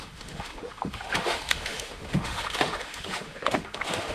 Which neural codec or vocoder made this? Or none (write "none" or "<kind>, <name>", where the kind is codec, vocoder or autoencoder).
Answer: autoencoder, DAC-VAE